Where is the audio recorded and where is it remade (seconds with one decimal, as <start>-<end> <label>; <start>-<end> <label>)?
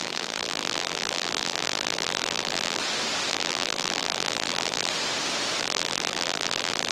0.0-2.8 remade; 2.8-3.3 recorded; 3.3-4.9 remade; 4.9-5.6 recorded; 5.6-6.9 remade